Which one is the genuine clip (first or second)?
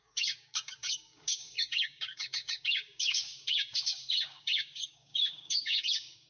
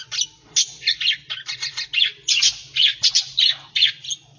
second